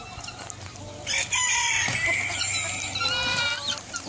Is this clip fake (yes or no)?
no